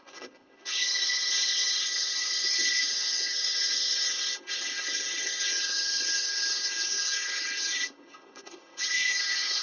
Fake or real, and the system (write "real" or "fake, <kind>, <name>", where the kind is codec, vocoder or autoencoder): fake, codec, HILCodec